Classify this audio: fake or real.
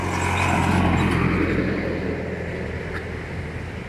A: real